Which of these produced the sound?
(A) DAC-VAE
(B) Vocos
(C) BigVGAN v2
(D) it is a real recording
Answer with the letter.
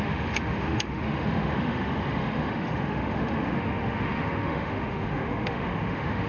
A